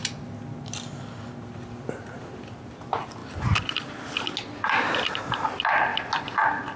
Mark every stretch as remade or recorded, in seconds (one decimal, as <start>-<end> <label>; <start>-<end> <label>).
0.0-6.8 recorded